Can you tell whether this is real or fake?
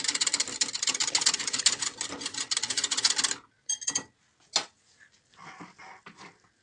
real